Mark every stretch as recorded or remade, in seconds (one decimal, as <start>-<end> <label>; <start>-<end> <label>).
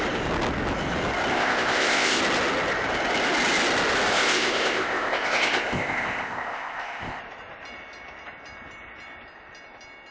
0.0-1.3 recorded; 1.3-2.2 remade; 2.2-4.1 recorded; 4.1-7.2 remade; 7.2-10.1 recorded